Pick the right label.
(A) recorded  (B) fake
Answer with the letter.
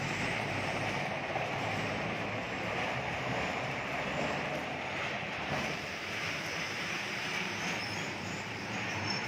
B